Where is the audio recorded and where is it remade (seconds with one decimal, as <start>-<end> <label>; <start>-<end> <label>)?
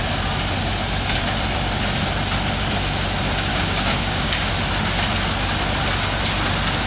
0.0-3.5 recorded; 3.5-4.5 remade; 4.5-6.9 recorded